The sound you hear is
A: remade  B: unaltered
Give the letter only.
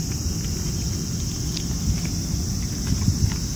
B